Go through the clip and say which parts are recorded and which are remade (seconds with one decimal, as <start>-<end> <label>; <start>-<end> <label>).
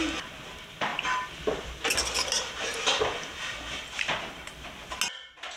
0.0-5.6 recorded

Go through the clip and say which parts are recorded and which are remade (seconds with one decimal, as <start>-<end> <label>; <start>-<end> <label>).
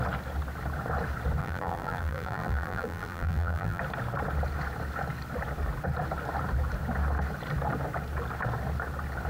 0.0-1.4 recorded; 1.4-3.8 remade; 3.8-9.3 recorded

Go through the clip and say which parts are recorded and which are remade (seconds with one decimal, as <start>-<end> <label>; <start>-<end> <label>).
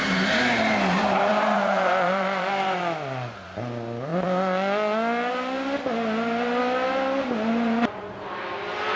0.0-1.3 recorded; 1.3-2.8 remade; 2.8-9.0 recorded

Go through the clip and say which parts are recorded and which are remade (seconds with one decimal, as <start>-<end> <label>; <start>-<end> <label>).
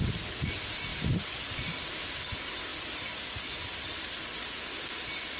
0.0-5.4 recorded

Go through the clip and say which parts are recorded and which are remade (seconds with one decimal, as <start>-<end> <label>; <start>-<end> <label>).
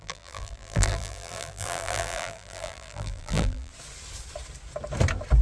0.0-3.7 remade; 3.7-5.4 recorded